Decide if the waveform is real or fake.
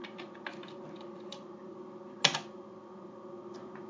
real